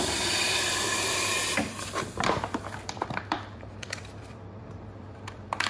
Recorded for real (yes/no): no